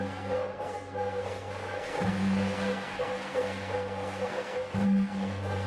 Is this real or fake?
fake